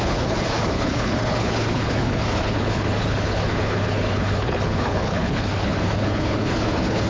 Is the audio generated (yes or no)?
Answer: yes